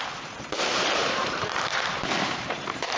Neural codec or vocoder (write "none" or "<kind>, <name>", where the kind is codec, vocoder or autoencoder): vocoder, BigVGAN v2